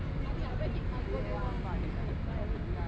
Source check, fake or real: real